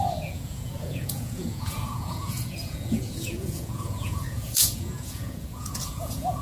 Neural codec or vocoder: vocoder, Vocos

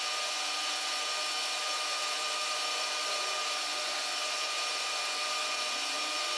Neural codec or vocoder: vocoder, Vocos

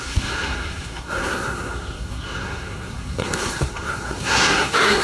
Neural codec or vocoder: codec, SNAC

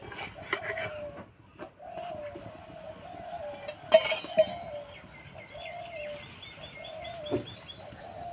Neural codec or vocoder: none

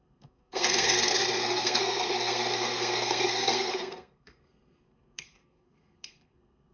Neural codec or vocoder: codec, SNAC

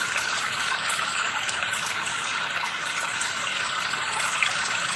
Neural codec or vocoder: codec, DAC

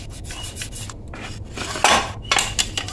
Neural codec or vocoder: none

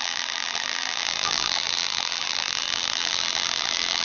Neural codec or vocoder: vocoder, BigVGAN v2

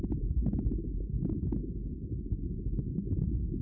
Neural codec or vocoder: none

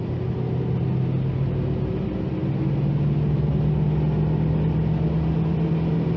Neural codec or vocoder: none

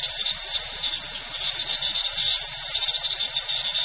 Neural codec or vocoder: none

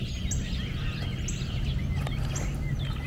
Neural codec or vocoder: none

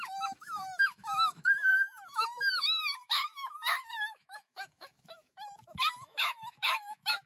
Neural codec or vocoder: autoencoder, DAC-VAE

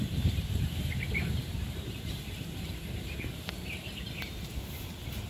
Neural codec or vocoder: vocoder, BigVGAN v2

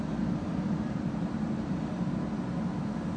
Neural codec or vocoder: vocoder, BigVGAN v2